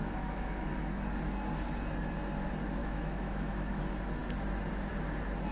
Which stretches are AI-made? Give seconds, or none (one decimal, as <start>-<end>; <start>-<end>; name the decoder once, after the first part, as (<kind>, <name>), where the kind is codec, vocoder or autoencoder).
0.0-0.7 (autoencoder, DAC-VAE); 2.8-3.8